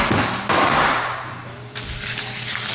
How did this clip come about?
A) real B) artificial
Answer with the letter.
A